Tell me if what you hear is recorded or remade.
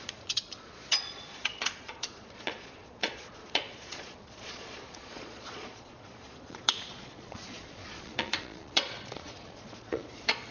remade